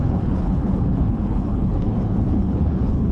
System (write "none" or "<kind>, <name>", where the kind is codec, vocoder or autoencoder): codec, HILCodec